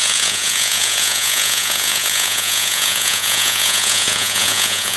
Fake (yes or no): yes